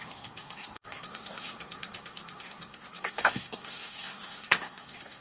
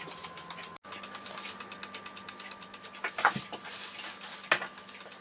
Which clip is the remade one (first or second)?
first